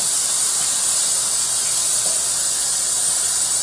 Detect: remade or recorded recorded